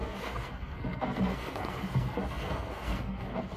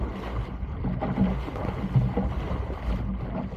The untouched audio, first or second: second